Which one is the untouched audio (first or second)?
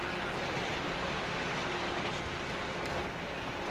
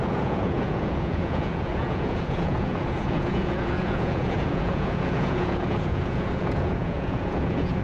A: first